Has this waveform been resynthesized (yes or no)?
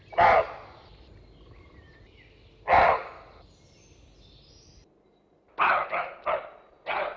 no